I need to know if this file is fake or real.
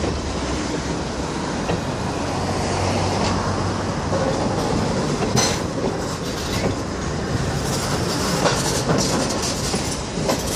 real